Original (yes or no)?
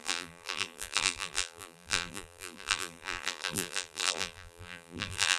no